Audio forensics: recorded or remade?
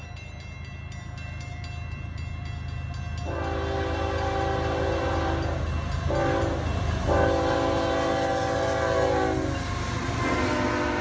recorded